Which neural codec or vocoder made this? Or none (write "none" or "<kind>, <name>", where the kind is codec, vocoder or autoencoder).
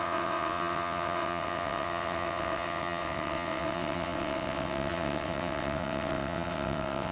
vocoder, WaveNeXt